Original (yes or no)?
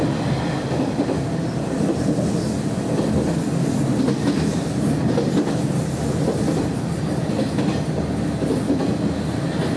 yes